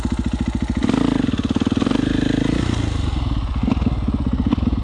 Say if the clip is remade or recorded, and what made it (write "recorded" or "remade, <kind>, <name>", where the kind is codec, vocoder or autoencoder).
recorded